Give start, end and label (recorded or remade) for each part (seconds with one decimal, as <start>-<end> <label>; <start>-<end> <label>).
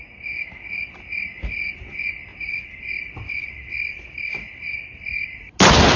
0.0-6.0 recorded